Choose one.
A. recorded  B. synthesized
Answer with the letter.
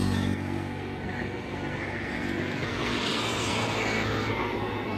B